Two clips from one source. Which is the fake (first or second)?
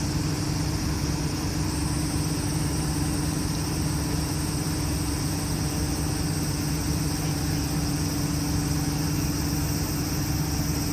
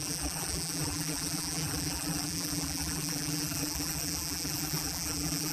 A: second